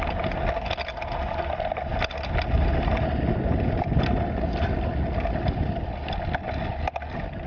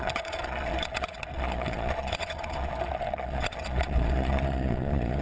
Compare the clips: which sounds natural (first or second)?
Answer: first